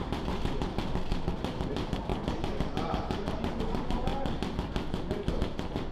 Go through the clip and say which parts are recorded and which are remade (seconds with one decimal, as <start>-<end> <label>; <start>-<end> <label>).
0.0-0.8 remade; 0.8-1.7 recorded; 1.7-2.1 remade; 2.1-3.6 recorded; 3.6-4.1 remade; 4.1-5.3 recorded; 5.3-5.9 remade